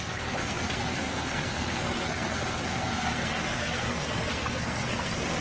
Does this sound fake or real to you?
fake